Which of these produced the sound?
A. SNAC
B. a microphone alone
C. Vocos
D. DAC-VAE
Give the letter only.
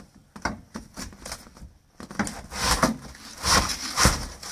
B